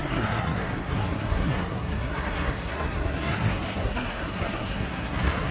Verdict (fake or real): fake